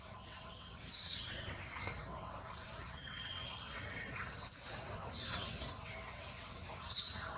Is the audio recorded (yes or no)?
no